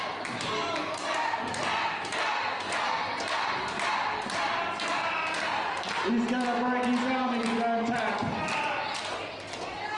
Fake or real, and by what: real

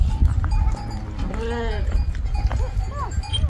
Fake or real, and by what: real